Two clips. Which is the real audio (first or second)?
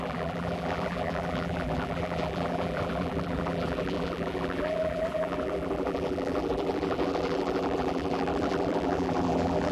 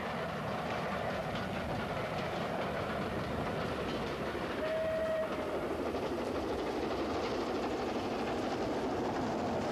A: second